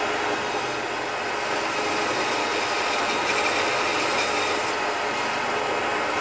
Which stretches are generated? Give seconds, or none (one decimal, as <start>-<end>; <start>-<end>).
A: none